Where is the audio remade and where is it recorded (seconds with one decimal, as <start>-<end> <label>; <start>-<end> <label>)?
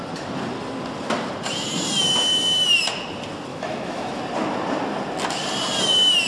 0.0-3.5 recorded; 3.5-4.2 remade; 4.2-6.3 recorded